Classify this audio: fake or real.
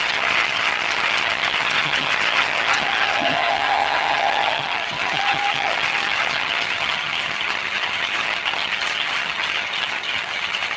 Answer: fake